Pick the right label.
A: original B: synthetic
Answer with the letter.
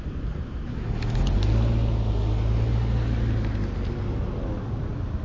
A